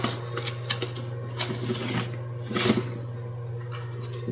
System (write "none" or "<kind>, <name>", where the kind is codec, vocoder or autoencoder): none